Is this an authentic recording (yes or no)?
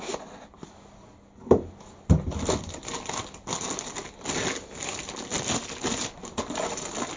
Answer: yes